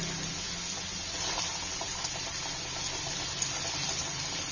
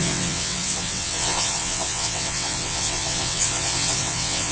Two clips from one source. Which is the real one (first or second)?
first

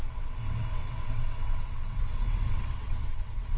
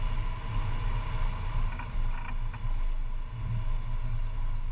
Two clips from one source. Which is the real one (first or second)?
second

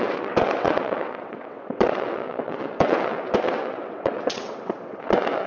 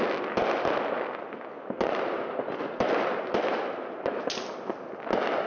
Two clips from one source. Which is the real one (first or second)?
second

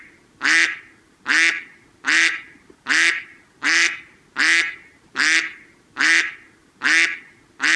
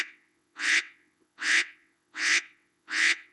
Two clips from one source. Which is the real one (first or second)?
first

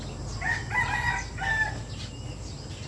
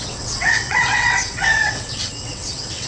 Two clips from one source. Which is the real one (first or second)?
first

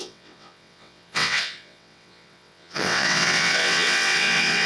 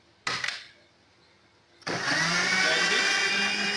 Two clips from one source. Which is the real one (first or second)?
second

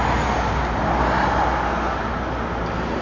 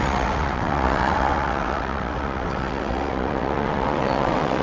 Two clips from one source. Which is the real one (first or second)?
first